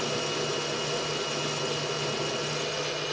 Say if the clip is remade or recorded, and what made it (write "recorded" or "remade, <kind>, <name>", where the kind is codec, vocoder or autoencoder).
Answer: recorded